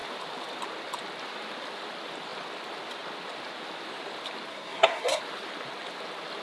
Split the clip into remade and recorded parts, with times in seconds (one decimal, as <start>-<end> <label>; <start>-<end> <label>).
0.0-4.5 recorded; 4.5-5.2 remade; 5.2-6.4 recorded